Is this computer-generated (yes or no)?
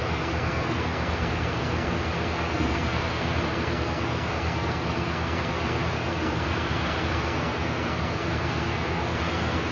yes